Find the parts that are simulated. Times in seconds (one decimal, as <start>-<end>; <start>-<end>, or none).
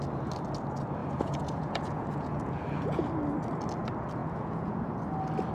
1.0-3.0; 4.2-4.8